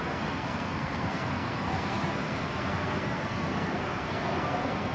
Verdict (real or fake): fake